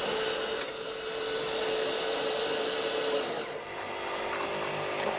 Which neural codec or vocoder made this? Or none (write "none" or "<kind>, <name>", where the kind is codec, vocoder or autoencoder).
none